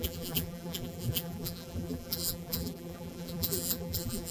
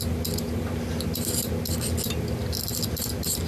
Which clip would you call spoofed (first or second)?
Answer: first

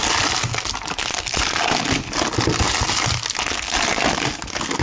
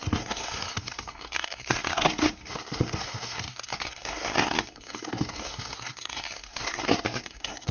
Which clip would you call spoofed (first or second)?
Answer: second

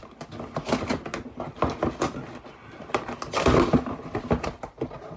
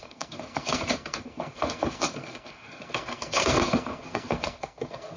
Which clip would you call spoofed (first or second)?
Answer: second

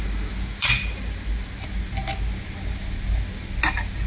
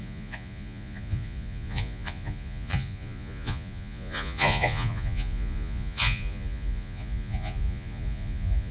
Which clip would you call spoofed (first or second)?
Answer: second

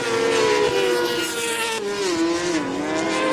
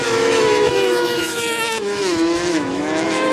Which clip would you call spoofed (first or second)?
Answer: second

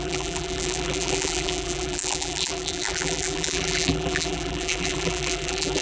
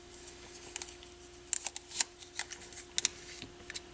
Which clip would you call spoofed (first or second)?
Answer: first